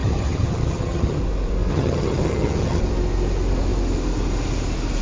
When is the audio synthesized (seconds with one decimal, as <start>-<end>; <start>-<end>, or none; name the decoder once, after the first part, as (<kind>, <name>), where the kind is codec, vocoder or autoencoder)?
0.0-1.2 (vocoder, HiFi-GAN); 1.7-2.8

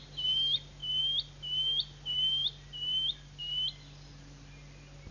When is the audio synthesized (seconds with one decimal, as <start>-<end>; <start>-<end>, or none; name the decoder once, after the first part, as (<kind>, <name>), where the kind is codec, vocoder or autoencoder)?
none

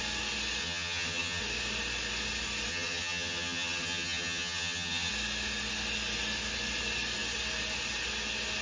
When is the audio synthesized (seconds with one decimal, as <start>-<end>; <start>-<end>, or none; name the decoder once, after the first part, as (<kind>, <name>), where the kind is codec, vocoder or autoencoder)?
0.6-1.4 (vocoder, HiFi-GAN); 2.7-5.1

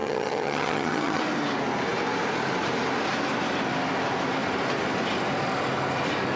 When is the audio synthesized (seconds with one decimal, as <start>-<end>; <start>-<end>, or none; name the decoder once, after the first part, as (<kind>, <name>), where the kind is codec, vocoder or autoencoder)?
0.0-1.2 (vocoder, HiFi-GAN)

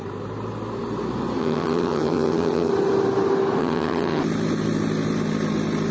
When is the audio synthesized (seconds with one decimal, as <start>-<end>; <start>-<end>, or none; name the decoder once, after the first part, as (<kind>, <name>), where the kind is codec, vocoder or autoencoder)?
1.4-2.7 (vocoder, HiFi-GAN); 3.6-4.2

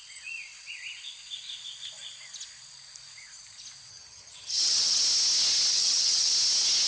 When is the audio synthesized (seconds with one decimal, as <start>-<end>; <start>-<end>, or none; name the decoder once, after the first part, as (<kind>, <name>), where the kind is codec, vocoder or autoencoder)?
3.9-5.0 (vocoder, HiFi-GAN); 5.7-6.3